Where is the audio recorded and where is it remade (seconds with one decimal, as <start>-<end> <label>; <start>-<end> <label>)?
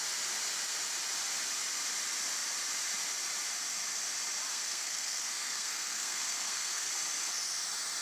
0.0-4.5 recorded; 4.5-6.9 remade; 6.9-8.0 recorded